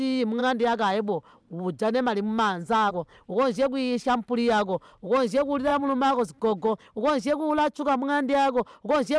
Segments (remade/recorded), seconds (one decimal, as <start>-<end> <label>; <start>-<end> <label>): 0.0-9.2 recorded